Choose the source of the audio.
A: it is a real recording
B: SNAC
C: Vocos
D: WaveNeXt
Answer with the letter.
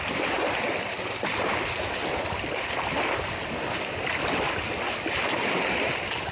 A